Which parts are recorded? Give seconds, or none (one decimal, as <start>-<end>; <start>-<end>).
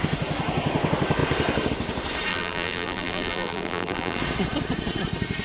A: 0.0-2.3; 4.2-5.4